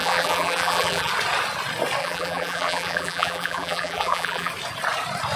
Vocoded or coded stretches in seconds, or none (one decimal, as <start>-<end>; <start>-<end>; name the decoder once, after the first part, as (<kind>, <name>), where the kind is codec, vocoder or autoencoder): 0.0-1.1 (vocoder, BigVGAN v2); 2.0-4.5